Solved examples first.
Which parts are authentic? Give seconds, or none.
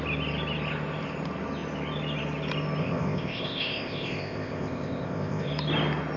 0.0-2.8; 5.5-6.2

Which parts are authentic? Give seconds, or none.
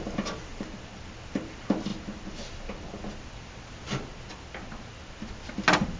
0.0-6.0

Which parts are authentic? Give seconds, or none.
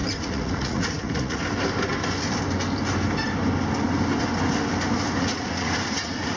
1.4-5.2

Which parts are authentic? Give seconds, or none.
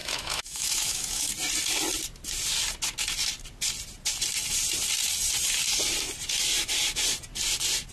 1.3-7.9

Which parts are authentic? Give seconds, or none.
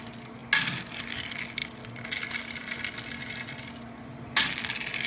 0.0-5.1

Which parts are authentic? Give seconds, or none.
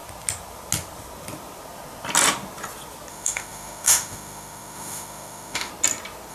0.0-3.1; 5.7-6.3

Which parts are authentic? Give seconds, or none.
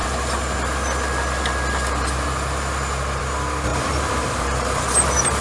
0.0-3.7; 5.0-5.4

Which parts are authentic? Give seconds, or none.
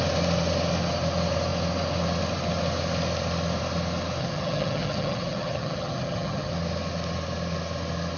0.0-4.2; 6.5-8.2